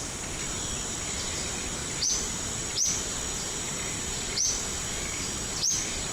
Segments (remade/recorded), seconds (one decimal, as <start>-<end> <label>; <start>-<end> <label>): 0.0-6.1 recorded